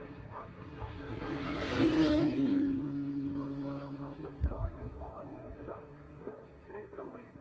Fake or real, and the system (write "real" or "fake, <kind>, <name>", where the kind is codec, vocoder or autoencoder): fake, codec, SNAC